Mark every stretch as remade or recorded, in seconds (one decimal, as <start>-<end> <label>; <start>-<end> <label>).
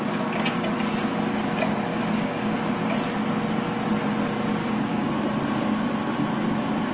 0.0-1.9 recorded; 1.9-2.5 remade; 2.5-4.6 recorded; 4.6-5.1 remade; 5.1-6.9 recorded